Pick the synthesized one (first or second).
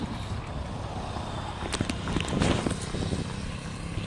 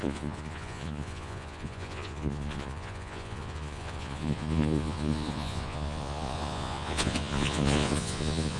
second